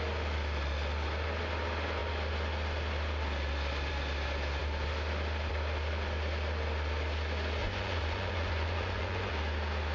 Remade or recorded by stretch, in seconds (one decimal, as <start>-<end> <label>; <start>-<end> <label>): 0.0-7.6 recorded; 7.6-9.3 remade; 9.3-9.9 recorded